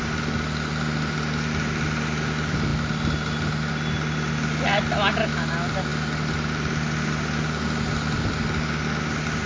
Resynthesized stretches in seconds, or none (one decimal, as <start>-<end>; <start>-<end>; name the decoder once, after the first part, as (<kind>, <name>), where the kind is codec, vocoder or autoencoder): none